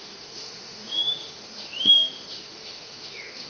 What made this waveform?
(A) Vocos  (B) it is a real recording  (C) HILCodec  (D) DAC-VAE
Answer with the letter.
D